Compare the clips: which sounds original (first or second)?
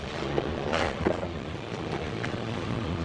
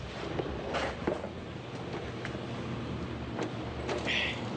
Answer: second